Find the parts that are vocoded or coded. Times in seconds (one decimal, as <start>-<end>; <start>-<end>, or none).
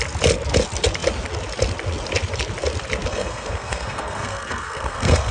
3.1-5.3